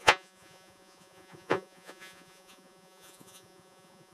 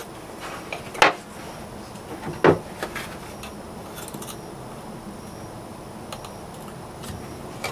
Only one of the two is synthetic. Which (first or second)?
first